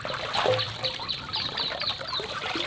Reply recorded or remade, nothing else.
remade